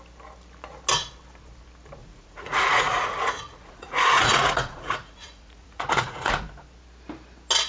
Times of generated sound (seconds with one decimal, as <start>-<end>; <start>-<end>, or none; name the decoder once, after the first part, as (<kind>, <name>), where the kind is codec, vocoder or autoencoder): 2.0-6.4 (vocoder, Vocos)